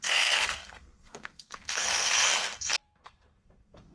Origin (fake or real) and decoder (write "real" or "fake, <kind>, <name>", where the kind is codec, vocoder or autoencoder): fake, codec, SNAC